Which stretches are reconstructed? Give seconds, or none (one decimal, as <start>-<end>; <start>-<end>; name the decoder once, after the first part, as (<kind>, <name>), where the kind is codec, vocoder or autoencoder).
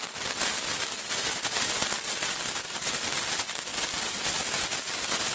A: none